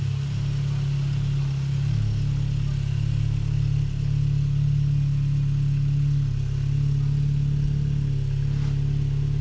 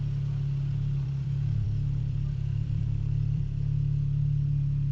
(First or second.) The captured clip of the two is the first